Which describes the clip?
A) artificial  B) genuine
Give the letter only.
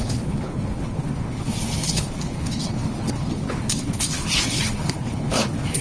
A